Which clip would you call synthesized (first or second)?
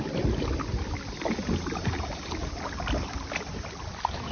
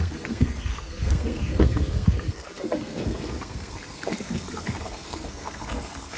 second